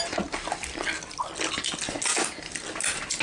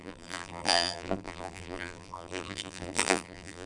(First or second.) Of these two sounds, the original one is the first